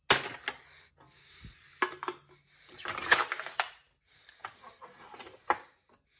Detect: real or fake real